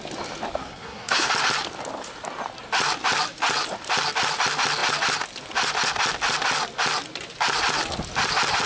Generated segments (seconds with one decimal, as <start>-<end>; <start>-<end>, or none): 0.6-1.3